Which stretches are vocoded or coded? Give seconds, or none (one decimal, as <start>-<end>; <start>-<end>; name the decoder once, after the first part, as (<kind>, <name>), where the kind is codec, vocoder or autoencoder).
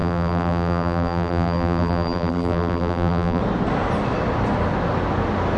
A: 0.0-3.4 (vocoder, BigVGAN v2)